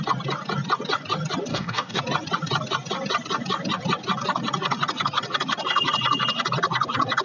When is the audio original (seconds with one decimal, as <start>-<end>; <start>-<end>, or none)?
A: 0.0-1.5; 2.0-7.2